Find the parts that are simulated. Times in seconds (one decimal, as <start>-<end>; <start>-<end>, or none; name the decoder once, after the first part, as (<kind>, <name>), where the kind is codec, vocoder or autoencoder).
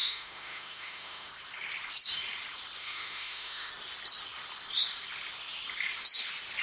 0.0-1.3 (autoencoder, DAC-VAE); 2.8-3.7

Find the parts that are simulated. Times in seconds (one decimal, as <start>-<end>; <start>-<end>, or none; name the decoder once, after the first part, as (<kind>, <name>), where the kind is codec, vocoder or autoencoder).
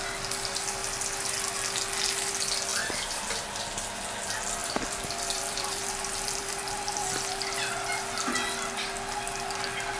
2.7-3.6 (vocoder, BigVGAN v2); 4.6-6.8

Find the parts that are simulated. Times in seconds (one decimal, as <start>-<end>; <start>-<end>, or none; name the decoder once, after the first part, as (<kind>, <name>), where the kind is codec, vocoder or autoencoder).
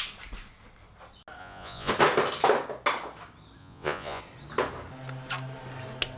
1.4-1.9 (vocoder, Vocos); 3.6-4.2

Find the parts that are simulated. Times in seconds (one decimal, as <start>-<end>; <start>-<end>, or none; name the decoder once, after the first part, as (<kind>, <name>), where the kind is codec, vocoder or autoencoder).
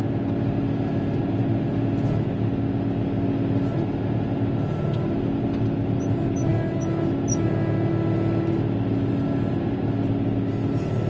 none